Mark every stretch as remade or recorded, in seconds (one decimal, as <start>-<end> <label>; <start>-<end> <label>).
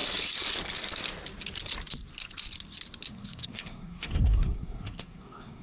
0.0-3.1 recorded; 3.1-5.6 remade